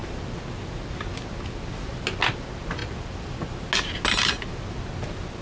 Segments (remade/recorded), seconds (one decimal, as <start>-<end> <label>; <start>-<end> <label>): 0.0-2.8 recorded; 2.8-3.6 remade; 3.6-5.4 recorded